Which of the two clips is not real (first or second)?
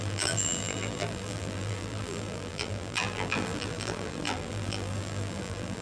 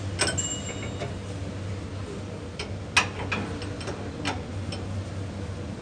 first